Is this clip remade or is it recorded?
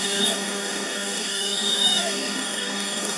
remade